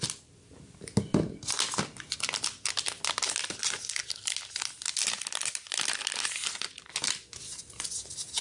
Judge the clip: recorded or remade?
recorded